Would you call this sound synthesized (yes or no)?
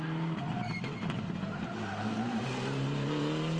no